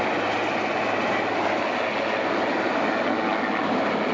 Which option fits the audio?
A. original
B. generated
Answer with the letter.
A